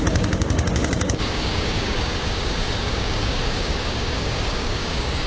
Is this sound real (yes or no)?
no